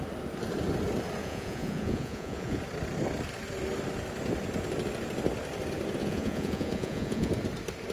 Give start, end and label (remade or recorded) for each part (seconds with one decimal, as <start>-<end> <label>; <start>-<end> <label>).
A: 0.0-1.2 recorded; 1.2-2.6 remade; 2.6-6.0 recorded; 6.0-7.3 remade; 7.3-7.9 recorded